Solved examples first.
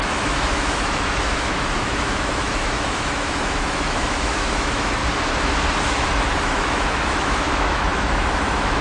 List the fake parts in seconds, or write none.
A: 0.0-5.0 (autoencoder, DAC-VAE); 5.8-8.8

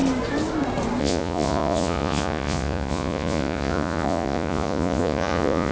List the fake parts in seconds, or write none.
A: 1.0-5.7 (vocoder, Vocos)

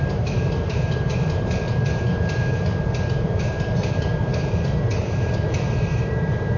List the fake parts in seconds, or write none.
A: 0.0-2.7 (vocoder, BigVGAN v2); 3.4-6.6

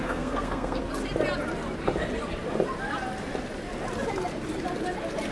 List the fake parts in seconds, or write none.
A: 0.0-0.8 (codec, SNAC)

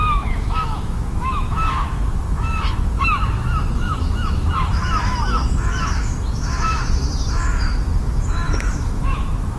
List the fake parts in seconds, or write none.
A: 0.0-9.6 (autoencoder, DAC-VAE)

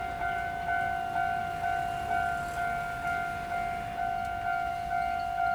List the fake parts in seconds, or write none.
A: none

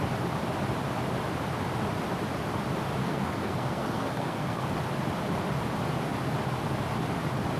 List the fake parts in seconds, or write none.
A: 3.0-4.7 (codec, SNAC)